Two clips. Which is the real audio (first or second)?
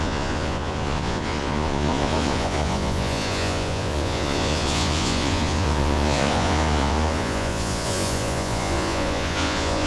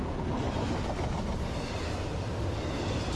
second